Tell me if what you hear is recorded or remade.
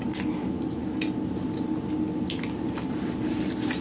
recorded